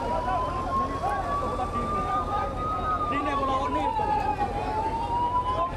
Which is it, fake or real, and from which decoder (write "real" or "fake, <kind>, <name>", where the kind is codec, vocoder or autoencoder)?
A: fake, vocoder, BigVGAN v2